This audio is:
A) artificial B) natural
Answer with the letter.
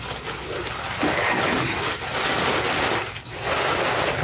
B